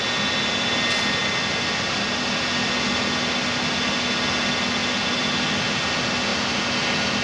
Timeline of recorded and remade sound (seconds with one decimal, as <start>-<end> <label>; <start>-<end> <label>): 0.0-7.2 recorded